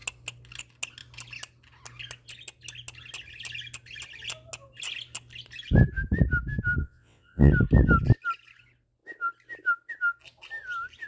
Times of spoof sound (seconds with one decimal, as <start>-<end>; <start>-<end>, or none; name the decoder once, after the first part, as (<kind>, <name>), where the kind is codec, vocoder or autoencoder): 6.8-7.5 (vocoder, WaveNeXt)